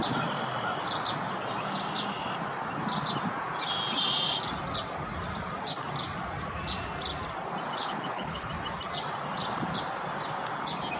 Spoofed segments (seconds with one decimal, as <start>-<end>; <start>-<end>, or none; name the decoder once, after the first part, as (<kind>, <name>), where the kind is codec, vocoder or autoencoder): 7.8-8.5 (codec, HILCodec)